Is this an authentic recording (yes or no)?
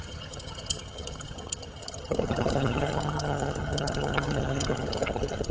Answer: no